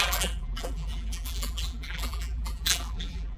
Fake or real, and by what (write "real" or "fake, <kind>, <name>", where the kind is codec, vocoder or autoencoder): fake, vocoder, BigVGAN v2